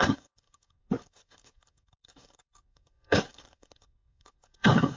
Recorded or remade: remade